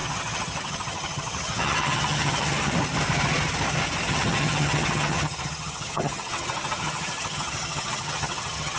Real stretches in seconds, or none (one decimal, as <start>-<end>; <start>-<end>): 2.7-4.1